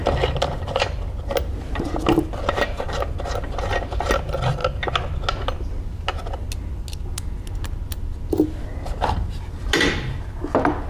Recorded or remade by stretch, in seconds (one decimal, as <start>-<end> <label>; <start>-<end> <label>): 0.0-10.9 recorded